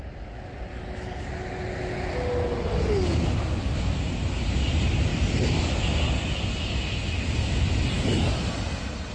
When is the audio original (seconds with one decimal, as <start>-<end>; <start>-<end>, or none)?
0.0-0.7; 1.2-9.1